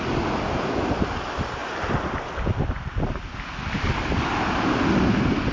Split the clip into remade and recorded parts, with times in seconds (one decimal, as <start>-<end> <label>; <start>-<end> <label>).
0.0-5.5 recorded